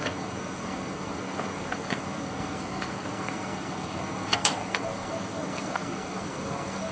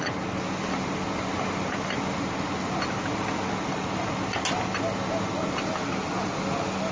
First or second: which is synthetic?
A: first